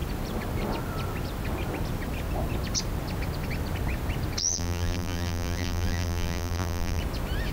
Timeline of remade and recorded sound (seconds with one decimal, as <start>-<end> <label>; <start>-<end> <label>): 0.0-4.4 recorded; 4.4-7.0 remade; 7.0-7.5 recorded